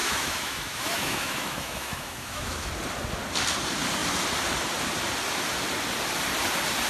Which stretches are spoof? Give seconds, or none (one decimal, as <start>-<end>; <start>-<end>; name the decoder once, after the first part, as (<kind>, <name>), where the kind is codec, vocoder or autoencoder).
0.0-2.7 (autoencoder, DAC-VAE)